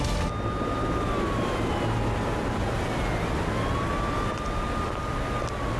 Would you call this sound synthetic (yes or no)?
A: no